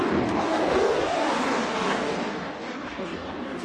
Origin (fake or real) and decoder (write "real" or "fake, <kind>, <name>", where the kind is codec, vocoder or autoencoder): fake, codec, DAC